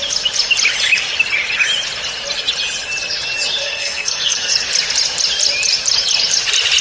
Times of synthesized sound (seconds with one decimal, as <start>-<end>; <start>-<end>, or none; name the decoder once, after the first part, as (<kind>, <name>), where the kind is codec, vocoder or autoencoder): 3.6-4.5 (codec, SNAC)